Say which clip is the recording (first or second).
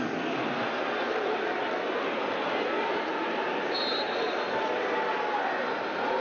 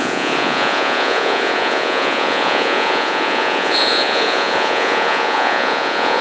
first